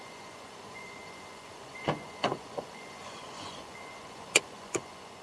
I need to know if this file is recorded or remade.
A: remade